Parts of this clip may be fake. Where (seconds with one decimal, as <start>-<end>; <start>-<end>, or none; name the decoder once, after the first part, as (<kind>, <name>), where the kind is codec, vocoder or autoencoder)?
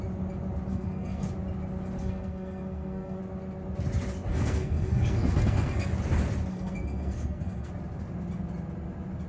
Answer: 0.7-1.3 (codec, SNAC); 2.0-3.2; 4.3-5.9; 6.5-7.7